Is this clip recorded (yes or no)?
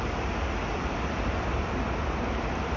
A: no